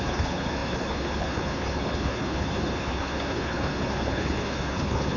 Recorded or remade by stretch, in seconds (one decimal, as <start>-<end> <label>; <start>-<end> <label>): 0.0-5.2 remade